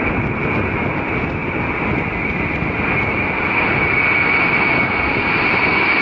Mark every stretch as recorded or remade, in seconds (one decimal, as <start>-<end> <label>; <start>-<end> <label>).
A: 0.0-6.0 recorded